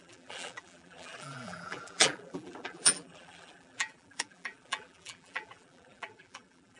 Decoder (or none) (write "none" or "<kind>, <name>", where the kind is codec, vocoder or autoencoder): vocoder, BigVGAN v2